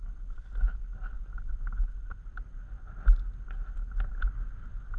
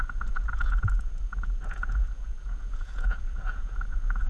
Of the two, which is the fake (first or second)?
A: second